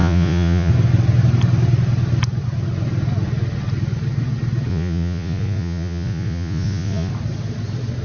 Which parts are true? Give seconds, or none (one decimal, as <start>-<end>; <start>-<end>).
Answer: 0.7-4.7; 7.1-8.0